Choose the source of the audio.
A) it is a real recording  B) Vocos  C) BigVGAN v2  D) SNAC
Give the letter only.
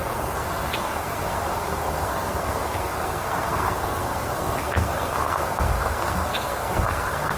D